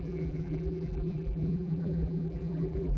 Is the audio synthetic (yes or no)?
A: yes